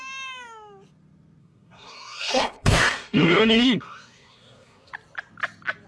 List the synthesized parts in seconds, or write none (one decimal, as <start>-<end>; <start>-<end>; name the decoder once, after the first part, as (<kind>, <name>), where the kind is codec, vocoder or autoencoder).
1.4-4.9 (codec, SNAC)